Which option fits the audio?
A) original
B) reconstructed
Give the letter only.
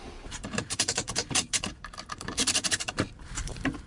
B